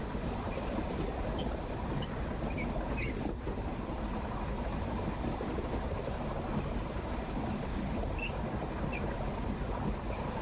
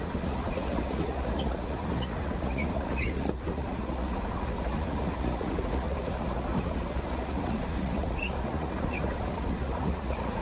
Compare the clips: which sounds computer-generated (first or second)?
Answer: second